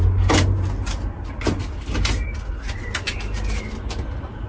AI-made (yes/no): no